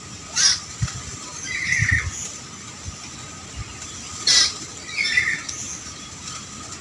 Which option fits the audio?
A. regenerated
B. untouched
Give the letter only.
B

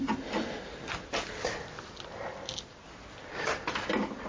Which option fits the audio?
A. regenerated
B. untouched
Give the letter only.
B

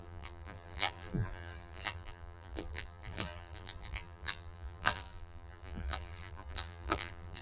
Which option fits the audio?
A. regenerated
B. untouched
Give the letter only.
A